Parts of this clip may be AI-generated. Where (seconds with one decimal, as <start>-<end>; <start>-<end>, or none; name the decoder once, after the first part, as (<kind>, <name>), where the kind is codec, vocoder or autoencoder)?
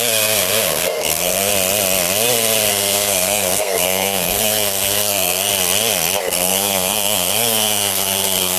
0.0-1.5 (codec, SNAC); 2.7-5.5; 6.2-8.6